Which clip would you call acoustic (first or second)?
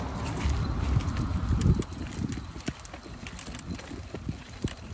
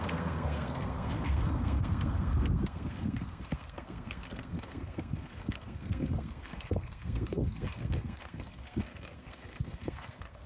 first